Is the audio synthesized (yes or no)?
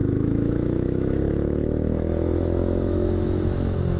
yes